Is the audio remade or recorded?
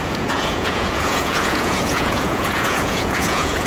remade